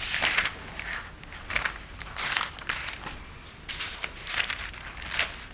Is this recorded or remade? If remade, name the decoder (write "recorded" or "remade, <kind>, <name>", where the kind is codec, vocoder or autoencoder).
remade, vocoder, BigVGAN v2